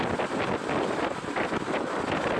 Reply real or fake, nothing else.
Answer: real